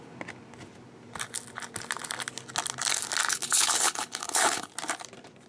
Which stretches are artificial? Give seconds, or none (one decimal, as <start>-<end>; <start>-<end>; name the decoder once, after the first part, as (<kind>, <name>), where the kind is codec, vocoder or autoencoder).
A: 3.3-4.7 (codec, HILCodec)